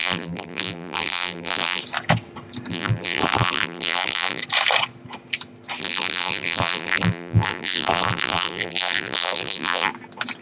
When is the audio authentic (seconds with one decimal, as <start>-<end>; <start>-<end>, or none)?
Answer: 1.8-2.7; 4.4-5.8; 9.9-10.4